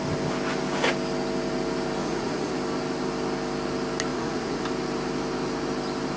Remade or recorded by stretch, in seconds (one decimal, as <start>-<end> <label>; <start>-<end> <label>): 0.0-2.0 recorded; 2.0-2.5 remade; 2.5-4.1 recorded; 4.1-4.6 remade; 4.6-6.2 recorded